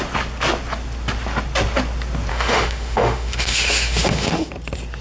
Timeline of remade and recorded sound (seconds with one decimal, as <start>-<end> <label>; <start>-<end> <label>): 0.0-2.3 recorded; 2.3-4.5 remade; 4.5-5.0 recorded